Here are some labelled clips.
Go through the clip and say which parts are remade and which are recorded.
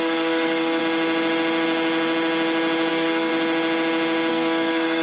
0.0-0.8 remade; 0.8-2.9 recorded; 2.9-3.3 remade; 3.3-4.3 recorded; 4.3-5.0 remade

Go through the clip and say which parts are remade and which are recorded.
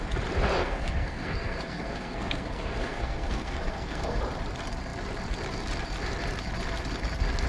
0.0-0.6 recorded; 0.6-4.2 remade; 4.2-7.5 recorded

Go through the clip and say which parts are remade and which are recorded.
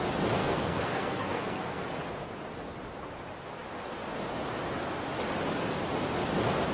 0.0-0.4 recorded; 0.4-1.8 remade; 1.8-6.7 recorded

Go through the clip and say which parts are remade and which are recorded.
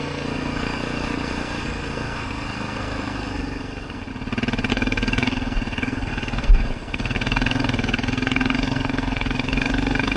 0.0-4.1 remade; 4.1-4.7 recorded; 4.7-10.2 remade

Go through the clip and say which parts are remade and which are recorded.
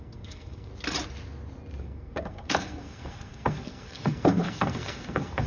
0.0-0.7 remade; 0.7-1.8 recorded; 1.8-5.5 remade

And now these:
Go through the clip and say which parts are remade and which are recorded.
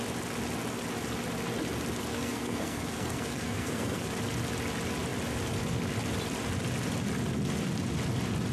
0.0-2.1 recorded; 2.1-4.1 remade; 4.1-8.5 recorded